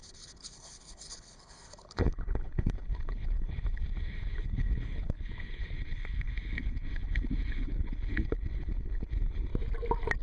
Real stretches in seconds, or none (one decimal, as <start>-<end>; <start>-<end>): 9.5-10.2